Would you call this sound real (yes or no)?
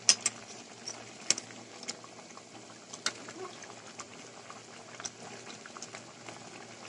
yes